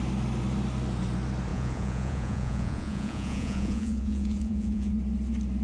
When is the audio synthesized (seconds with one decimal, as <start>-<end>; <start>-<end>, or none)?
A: 1.5-4.9

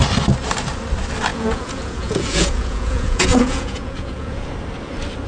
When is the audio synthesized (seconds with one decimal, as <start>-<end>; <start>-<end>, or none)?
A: 1.3-4.5

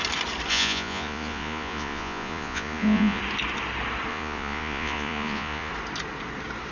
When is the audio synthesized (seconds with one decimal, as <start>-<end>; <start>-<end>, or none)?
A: 0.5-3.2; 4.1-5.7